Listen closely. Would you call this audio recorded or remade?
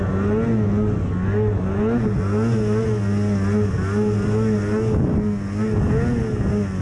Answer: recorded